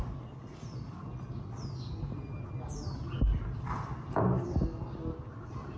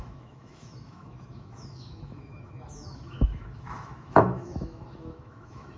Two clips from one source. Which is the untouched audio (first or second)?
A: first